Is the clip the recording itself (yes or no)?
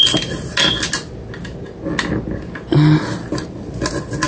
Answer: yes